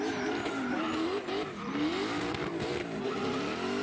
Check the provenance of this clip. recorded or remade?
recorded